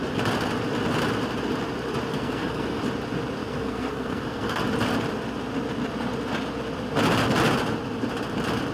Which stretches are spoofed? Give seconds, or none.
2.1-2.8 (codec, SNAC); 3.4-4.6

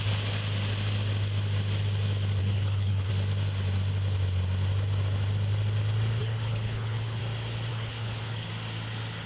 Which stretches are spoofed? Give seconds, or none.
2.4-3.1 (codec, HILCodec); 6.2-7.2; 7.7-8.5

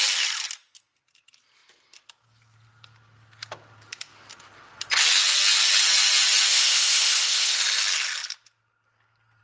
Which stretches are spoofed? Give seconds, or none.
6.5-7.6 (codec, ZipCodec)

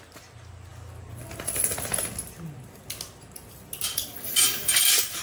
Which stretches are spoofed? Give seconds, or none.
none